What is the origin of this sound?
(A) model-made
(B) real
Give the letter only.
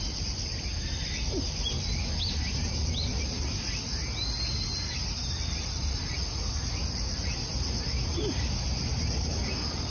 B